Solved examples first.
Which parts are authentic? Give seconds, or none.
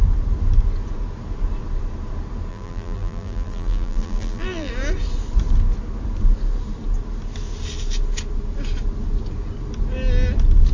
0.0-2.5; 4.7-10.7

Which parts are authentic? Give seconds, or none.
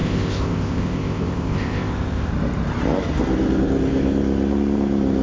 2.3-5.2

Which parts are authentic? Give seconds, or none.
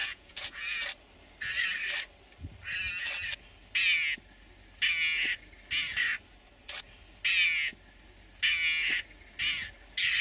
0.8-10.2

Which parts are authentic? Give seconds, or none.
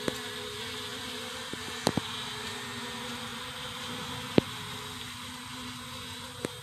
0.0-0.9; 1.5-3.3; 3.8-6.6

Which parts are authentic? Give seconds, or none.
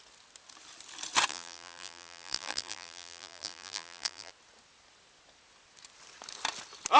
0.0-1.3; 4.3-7.0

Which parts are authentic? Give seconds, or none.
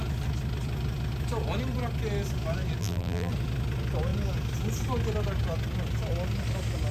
0.0-2.8; 3.3-6.9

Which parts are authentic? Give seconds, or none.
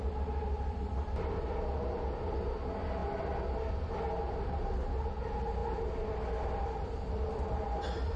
0.0-8.2